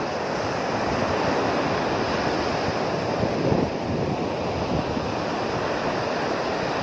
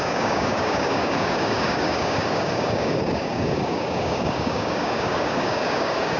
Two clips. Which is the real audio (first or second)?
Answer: first